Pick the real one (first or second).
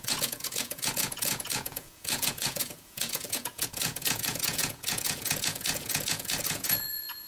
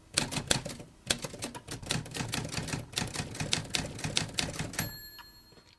second